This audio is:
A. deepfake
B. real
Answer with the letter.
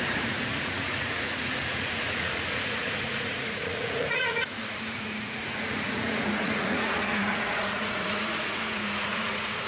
A